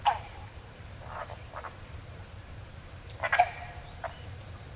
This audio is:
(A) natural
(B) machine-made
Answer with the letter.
B